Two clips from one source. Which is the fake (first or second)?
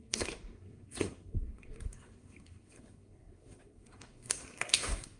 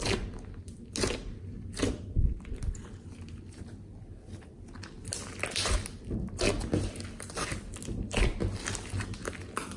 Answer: first